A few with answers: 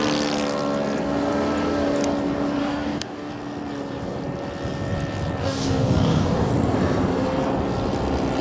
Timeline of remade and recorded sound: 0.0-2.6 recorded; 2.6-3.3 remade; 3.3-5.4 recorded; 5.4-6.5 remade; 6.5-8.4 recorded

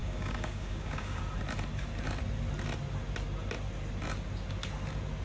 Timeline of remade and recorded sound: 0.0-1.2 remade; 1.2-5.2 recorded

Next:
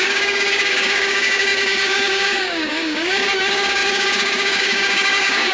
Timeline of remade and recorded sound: 0.0-5.5 remade